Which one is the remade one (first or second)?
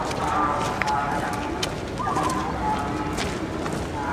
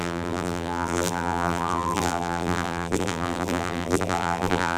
second